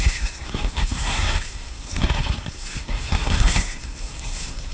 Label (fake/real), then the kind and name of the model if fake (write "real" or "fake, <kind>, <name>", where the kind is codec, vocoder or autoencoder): fake, codec, SNAC